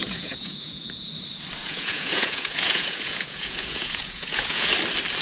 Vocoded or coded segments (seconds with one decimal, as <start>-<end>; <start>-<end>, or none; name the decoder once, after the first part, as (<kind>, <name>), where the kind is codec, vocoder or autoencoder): 0.0-1.1 (vocoder, Vocos); 1.6-4.7